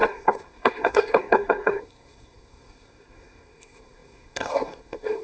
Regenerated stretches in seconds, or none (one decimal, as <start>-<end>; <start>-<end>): 0.0-5.2